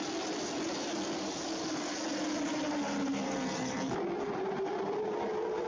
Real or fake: real